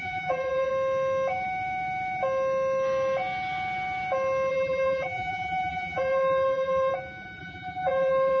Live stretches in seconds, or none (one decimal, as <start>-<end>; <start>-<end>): 0.7-4.5; 6.9-7.4

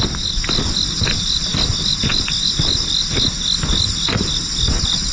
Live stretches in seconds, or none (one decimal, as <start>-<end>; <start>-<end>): 0.0-5.1

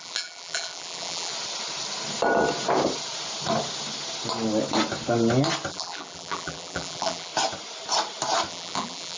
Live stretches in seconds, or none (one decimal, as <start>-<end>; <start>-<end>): 1.3-5.7; 7.3-8.5

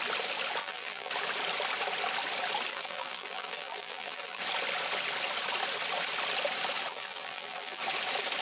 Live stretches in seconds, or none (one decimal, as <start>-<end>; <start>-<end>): 0.0-0.6; 1.1-2.7; 4.4-6.9; 7.8-8.4

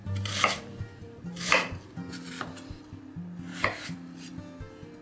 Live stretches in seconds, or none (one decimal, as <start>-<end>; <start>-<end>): 3.0-3.5; 4.3-5.0

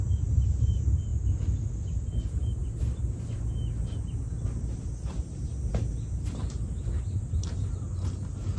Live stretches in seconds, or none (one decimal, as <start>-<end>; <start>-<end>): 0.0-8.6

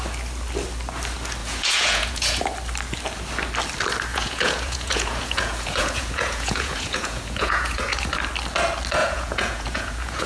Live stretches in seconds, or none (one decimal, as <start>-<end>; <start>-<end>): 0.0-1.4; 2.4-4.1; 8.0-9.0

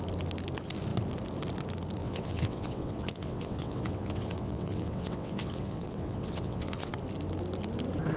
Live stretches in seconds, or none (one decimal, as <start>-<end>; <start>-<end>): 0.0-2.0; 6.9-8.2